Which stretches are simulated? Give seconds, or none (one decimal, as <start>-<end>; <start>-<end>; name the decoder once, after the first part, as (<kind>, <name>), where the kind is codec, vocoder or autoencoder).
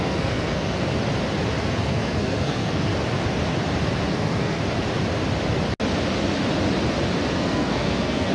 0.0-1.0 (codec, SNAC); 1.8-2.9; 4.1-4.6; 7.3-8.3